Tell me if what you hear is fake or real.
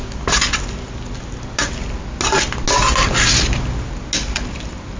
real